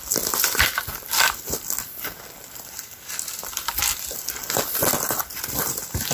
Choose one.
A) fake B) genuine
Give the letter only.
B